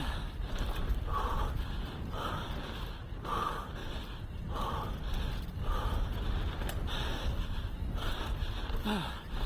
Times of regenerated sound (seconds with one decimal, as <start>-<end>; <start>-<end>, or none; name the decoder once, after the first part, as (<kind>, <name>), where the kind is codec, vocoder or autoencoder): none